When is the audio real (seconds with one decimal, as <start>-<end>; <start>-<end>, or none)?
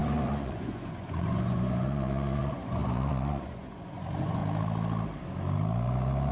4.4-6.3